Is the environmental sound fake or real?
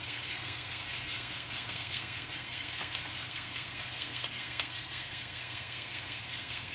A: fake